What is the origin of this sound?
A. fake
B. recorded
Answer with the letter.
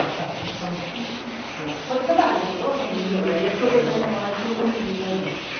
B